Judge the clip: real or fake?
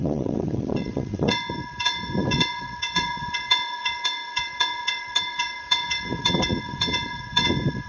fake